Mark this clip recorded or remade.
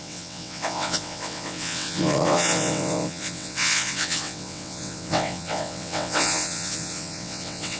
remade